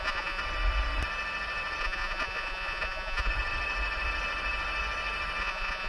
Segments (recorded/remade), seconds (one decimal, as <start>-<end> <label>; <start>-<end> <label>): 0.0-0.4 remade; 0.4-1.8 recorded; 1.8-3.3 remade; 3.3-5.4 recorded; 5.4-5.9 remade